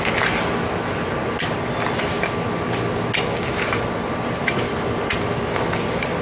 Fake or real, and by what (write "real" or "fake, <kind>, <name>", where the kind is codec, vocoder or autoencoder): real